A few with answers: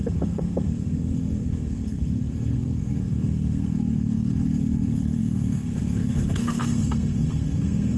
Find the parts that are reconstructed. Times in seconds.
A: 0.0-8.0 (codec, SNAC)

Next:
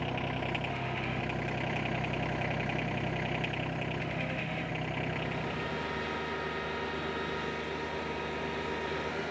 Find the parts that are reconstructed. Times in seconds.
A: 0.7-1.2 (autoencoder, DAC-VAE); 4.0-4.7

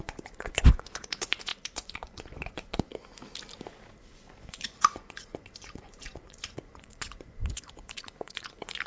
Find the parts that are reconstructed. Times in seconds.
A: 0.0-2.9 (vocoder, Vocos); 4.1-8.9

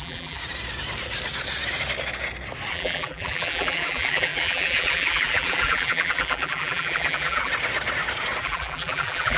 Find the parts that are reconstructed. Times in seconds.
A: 0.0-0.4 (vocoder, BigVGAN v2); 2.7-7.5; 8.4-9.4

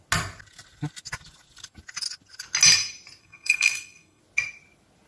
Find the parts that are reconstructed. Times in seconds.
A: 3.2-4.2 (codec, SNAC)

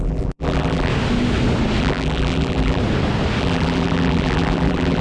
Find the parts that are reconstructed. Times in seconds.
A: 0.0-0.9 (vocoder, BigVGAN v2); 1.8-2.8; 3.4-5.0